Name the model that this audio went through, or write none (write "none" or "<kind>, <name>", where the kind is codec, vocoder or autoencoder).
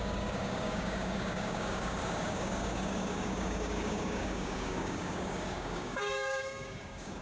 codec, DAC